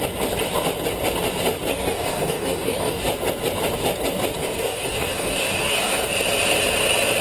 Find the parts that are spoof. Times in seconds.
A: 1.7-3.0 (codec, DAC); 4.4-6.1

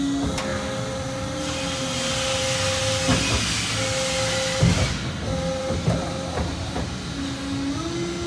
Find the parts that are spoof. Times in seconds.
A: none

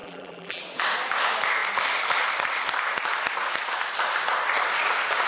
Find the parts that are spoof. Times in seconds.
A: 0.0-0.6 (vocoder, BigVGAN v2)

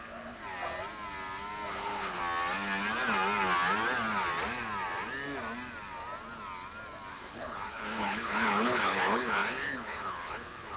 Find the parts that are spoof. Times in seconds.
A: 0.0-0.4 (codec, HILCodec); 1.7-2.2; 7.1-10.8